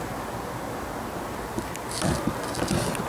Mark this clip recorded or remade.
recorded